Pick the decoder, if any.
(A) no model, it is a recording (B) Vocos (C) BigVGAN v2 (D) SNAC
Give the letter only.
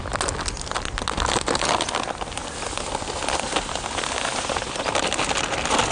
A